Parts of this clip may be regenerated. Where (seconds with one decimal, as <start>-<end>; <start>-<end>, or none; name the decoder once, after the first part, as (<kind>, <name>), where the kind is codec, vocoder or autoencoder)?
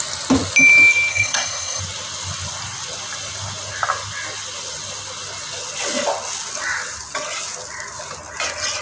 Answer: 1.1-1.8 (codec, SNAC)